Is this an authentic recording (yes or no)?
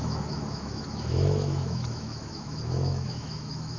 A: no